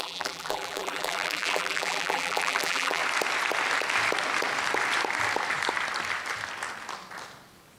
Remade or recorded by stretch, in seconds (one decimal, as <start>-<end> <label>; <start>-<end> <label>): 0.0-3.0 remade; 3.0-7.8 recorded